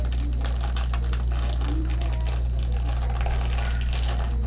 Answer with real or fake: real